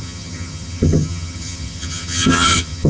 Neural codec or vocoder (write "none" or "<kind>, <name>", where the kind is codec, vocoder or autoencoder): vocoder, HiFi-GAN